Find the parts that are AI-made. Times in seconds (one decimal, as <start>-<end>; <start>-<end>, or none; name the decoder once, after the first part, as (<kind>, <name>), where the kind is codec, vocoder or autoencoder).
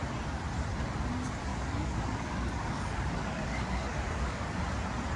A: 1.5-4.6 (codec, DAC)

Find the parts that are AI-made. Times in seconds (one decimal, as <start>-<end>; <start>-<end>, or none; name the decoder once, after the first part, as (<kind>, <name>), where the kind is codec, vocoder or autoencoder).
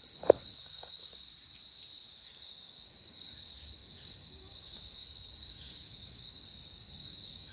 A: 0.0-1.3 (codec, DAC); 2.1-7.5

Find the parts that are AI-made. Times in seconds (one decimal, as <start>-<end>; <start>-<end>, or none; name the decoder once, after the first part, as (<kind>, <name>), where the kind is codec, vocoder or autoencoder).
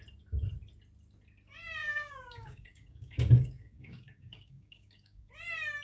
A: 1.8-5.3 (codec, DAC)